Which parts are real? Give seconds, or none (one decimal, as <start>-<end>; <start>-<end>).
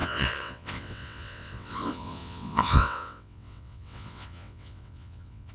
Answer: none